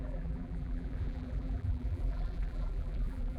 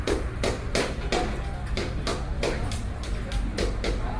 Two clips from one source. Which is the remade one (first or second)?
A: first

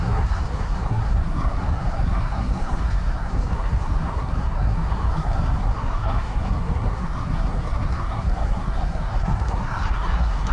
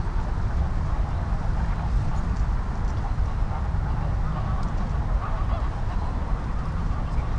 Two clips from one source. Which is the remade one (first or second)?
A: first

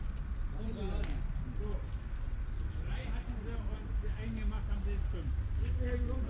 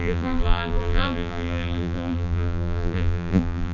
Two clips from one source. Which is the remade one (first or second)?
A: second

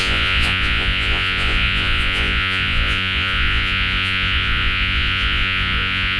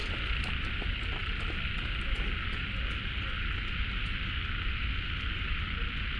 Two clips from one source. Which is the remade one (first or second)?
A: first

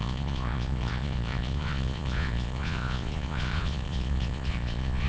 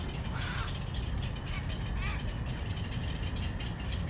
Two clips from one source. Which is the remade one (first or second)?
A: first